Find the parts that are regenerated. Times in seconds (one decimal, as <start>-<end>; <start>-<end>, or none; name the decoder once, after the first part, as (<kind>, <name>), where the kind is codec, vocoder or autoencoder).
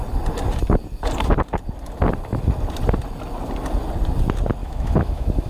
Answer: 4.6-5.5 (autoencoder, DAC-VAE)